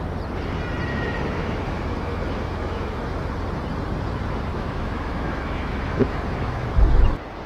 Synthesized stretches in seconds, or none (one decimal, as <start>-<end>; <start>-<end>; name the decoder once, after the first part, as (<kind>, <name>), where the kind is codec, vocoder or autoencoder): 0.9-3.3 (autoencoder, DAC-VAE); 4.5-6.8